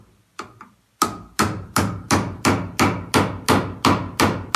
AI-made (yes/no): no